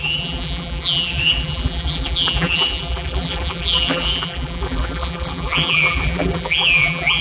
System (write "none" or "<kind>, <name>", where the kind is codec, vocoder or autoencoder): vocoder, BigVGAN v2